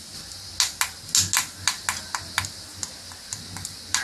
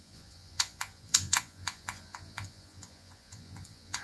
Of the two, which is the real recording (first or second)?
first